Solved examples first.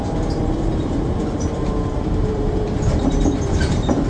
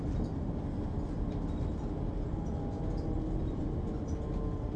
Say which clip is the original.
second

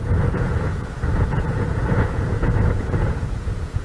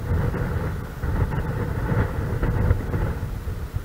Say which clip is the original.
second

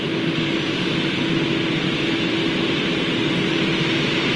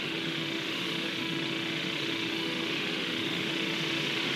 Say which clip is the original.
first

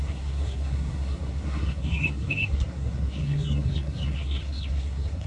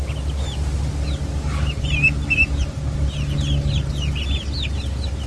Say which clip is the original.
second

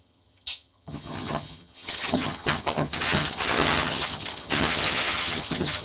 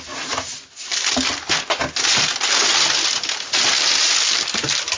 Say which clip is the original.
second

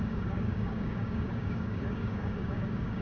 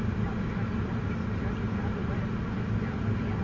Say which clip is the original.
second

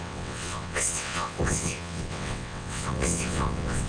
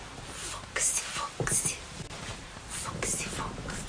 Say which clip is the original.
second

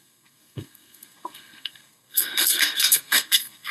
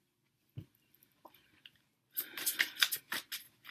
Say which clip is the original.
second